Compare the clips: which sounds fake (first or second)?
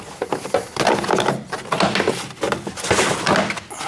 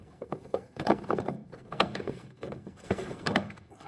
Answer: second